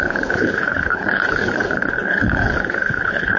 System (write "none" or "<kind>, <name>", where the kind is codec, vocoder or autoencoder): codec, HILCodec